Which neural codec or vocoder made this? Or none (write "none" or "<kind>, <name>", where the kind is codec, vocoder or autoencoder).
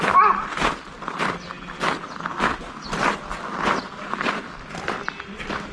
none